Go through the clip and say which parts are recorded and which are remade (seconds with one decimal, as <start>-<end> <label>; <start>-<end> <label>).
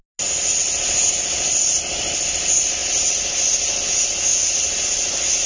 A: 0.0-4.3 recorded; 4.3-4.8 remade; 4.8-5.5 recorded